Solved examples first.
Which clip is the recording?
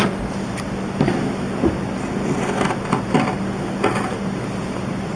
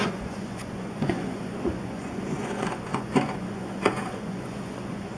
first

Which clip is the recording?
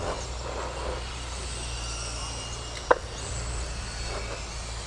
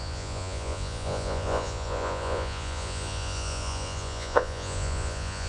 first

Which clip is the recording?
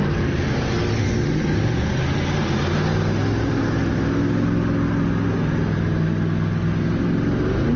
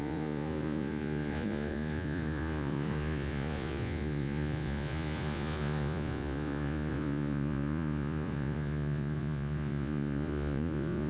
first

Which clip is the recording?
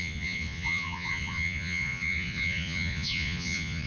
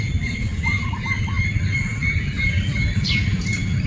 second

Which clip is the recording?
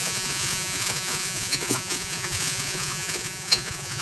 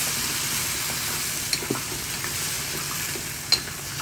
second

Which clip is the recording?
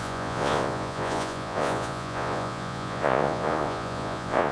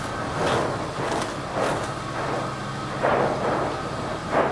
second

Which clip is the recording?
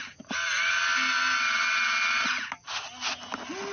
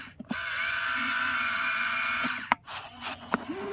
first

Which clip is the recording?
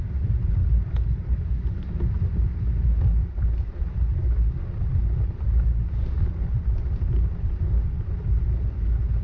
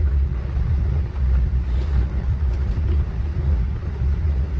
first